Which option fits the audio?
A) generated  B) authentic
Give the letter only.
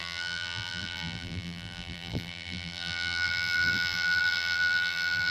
A